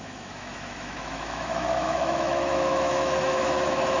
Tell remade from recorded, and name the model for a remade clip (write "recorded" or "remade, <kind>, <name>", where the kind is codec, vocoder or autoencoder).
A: remade, autoencoder, DAC-VAE